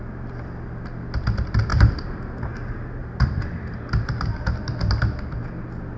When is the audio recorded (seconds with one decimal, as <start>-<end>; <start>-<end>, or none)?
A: 0.0-1.7; 2.4-3.0; 3.8-6.0